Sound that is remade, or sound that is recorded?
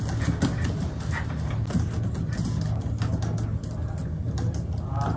recorded